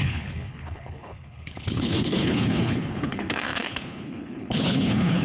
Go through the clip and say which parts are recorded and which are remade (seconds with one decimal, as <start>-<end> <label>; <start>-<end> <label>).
0.0-5.2 remade